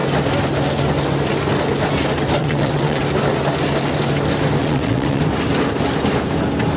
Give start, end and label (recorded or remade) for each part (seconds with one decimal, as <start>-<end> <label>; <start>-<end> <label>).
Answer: 0.0-2.4 recorded; 2.4-3.0 remade; 3.0-4.6 recorded; 4.6-5.2 remade; 5.2-6.8 recorded